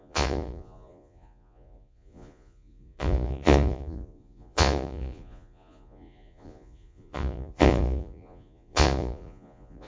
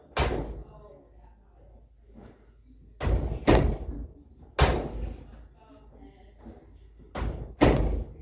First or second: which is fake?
first